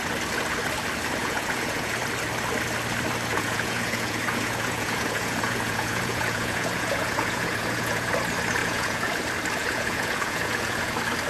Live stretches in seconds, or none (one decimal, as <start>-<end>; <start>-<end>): 0.0-1.2; 2.0-3.3; 8.1-8.6; 9.1-9.6; 10.9-11.3